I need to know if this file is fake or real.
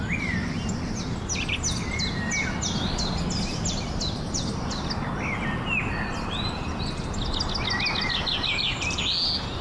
real